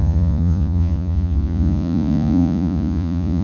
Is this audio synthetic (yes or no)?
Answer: yes